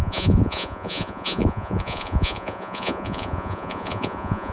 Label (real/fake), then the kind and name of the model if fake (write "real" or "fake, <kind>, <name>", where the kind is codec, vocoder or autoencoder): fake, vocoder, Vocos